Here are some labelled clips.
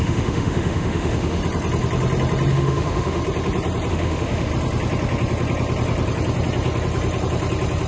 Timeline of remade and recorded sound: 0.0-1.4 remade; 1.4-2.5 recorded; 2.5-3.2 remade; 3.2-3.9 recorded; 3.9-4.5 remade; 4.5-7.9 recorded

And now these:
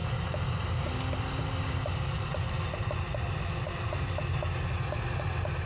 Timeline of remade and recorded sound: 0.0-5.7 recorded

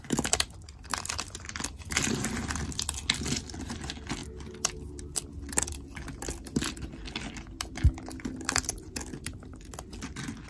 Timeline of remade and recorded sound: 0.0-10.5 recorded

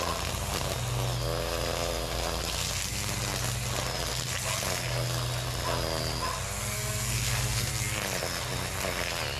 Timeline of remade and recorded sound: 0.0-6.6 recorded; 6.6-7.7 remade; 7.7-9.4 recorded

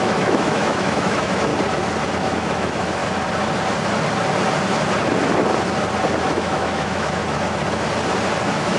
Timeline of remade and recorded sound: 0.0-1.5 remade; 1.5-2.2 recorded; 2.2-3.0 remade; 3.0-6.2 recorded; 6.2-7.2 remade; 7.2-8.4 recorded; 8.4-8.8 remade